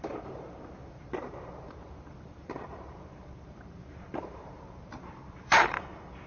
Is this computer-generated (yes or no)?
yes